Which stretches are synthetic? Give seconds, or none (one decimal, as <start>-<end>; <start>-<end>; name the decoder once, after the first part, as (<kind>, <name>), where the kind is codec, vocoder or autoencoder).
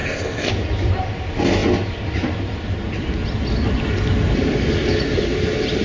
0.0-0.5 (codec, ZipCodec)